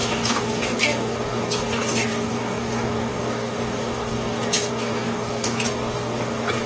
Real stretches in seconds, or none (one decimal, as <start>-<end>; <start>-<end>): none